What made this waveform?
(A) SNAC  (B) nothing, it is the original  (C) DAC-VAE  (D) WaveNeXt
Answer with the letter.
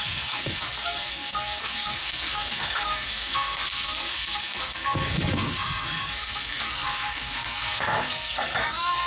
A